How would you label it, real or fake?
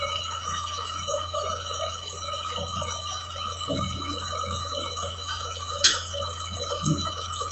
fake